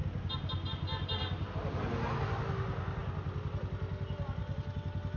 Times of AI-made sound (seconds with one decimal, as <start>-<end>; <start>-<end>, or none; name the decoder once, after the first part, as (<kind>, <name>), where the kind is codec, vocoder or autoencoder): none